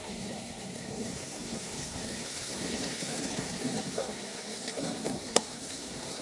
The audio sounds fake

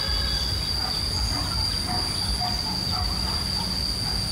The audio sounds real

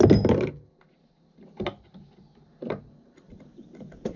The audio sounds real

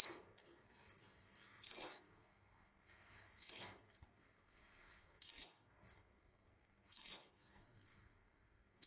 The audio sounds fake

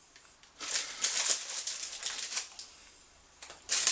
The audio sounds real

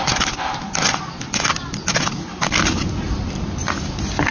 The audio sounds real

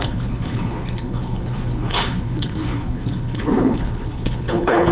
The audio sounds fake